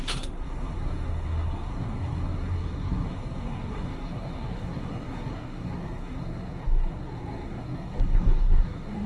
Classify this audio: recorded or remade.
remade